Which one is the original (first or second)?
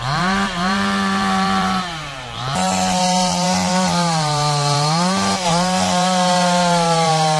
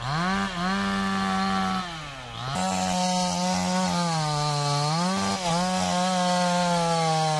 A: second